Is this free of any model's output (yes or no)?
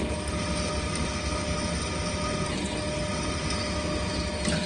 yes